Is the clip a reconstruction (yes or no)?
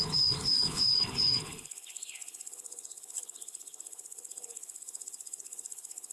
yes